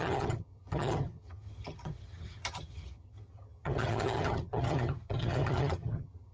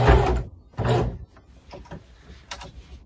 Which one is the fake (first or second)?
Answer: first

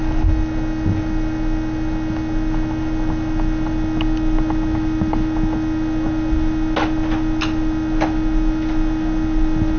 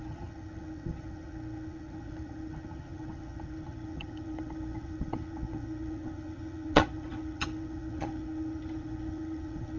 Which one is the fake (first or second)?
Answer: second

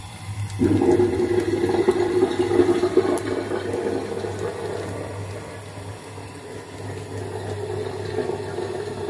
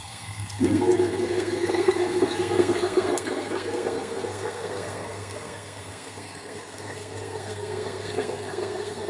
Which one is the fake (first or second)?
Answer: second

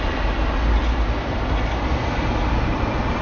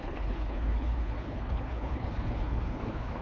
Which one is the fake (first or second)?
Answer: second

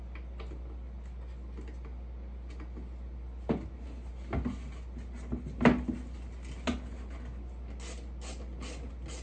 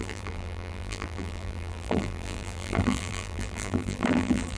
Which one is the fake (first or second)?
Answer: second